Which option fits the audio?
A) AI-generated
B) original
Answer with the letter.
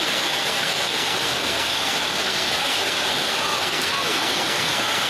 A